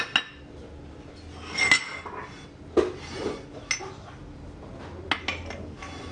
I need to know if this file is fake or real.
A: real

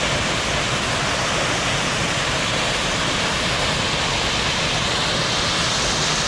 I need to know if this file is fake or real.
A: real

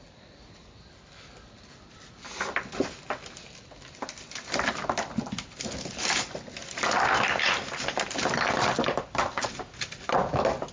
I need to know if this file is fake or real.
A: real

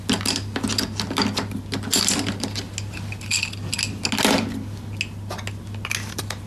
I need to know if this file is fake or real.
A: real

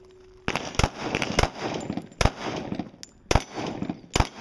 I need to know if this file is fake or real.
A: real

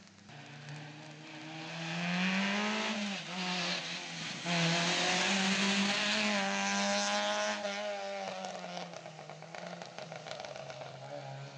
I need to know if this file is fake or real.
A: real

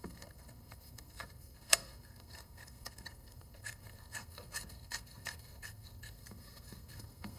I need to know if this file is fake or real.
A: fake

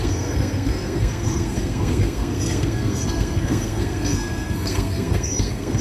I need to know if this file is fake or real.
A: fake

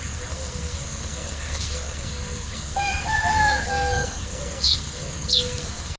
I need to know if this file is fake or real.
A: fake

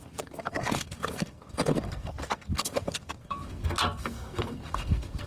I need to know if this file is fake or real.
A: fake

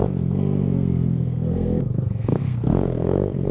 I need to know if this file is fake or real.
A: fake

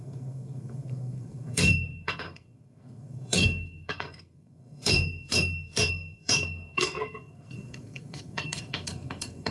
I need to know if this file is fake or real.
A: fake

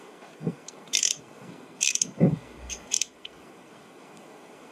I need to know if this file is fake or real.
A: fake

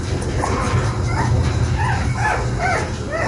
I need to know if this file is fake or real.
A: real